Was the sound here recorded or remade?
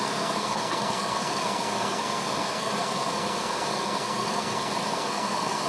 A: remade